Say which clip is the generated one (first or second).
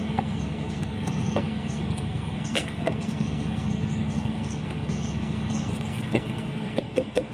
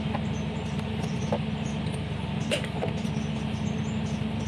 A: first